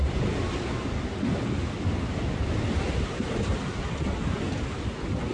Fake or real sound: real